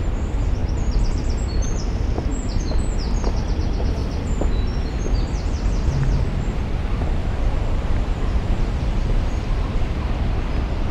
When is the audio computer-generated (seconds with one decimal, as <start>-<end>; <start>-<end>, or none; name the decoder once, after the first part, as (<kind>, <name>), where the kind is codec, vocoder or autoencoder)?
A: 0.6-1.8 (vocoder, BigVGAN v2); 2.3-3.6; 7.2-10.2